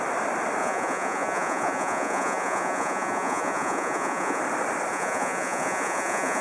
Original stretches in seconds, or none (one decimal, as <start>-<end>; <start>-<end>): 0.0-0.6; 4.4-4.9